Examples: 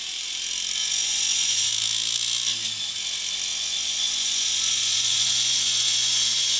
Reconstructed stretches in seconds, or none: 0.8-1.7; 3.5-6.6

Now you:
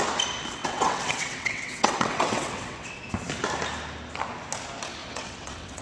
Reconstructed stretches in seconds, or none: 0.6-3.0; 5.0-5.8